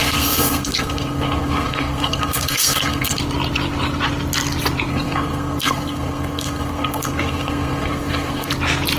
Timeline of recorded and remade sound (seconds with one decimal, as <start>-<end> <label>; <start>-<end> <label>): 0.0-3.2 remade; 3.2-4.9 recorded; 4.9-8.5 remade; 8.5-9.0 recorded